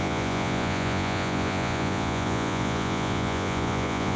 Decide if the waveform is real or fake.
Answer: fake